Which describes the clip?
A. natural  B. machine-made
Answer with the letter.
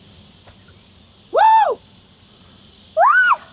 A